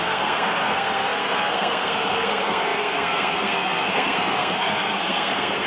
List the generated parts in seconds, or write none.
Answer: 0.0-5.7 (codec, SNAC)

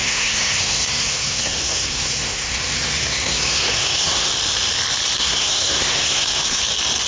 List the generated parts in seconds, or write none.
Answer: 0.0-4.3 (codec, SNAC); 5.2-6.6

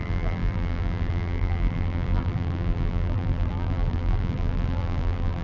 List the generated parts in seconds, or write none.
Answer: 0.0-5.4 (vocoder, BigVGAN v2)

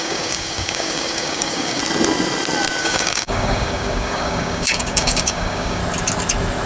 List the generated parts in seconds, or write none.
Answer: 0.0-1.8 (codec, DAC); 2.8-5.8

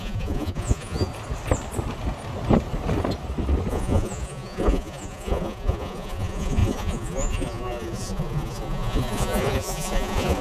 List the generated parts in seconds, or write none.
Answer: 0.0-1.1 (vocoder, Vocos); 3.7-10.4

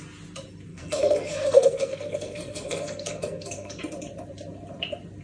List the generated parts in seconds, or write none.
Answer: 0.7-3.8 (codec, SNAC)